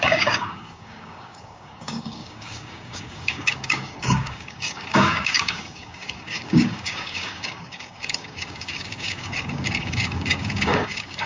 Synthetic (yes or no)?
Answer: yes